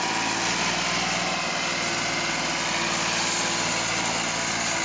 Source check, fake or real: real